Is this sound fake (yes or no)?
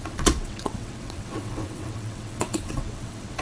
yes